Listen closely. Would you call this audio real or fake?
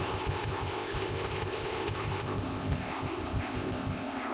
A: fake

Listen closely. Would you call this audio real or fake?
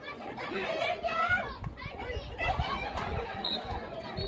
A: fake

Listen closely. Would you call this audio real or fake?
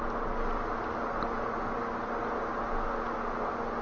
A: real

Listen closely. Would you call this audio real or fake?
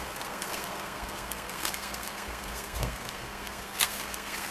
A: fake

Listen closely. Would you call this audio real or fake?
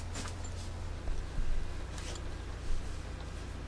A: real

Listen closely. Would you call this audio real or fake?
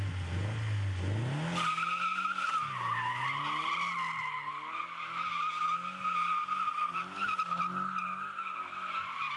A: real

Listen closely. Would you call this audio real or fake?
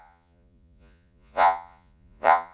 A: fake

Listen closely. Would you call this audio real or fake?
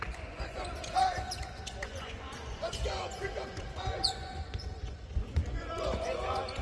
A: fake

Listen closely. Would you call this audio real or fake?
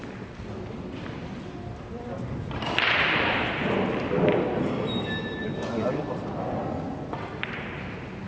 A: fake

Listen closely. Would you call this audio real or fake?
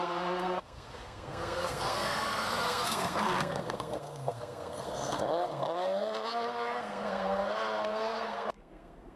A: fake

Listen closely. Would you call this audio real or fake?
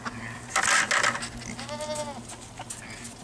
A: real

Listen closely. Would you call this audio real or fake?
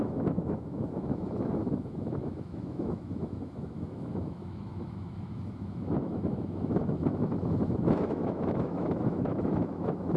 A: fake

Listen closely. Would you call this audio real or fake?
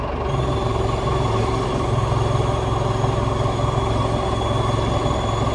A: real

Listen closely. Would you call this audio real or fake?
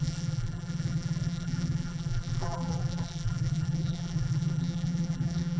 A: fake